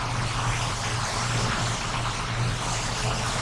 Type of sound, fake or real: real